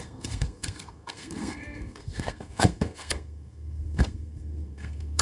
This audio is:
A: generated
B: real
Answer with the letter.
A